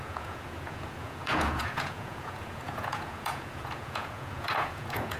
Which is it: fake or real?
fake